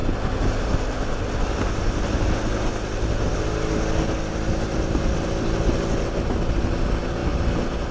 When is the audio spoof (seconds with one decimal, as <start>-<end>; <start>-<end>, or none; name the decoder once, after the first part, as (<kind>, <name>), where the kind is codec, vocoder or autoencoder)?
none